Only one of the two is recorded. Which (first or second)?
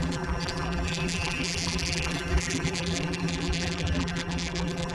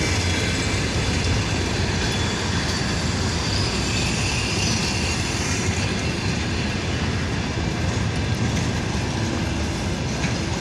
second